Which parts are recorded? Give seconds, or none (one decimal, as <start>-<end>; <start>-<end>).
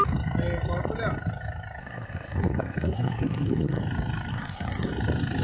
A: 0.0-1.8; 3.8-4.3; 4.9-5.4